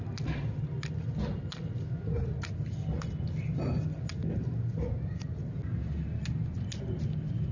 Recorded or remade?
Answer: recorded